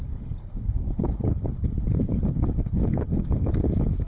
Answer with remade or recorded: remade